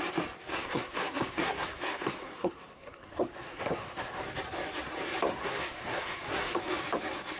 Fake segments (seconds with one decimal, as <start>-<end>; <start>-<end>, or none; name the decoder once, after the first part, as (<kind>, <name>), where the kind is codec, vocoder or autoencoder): 0.5-4.2 (codec, SNAC); 5.3-6.6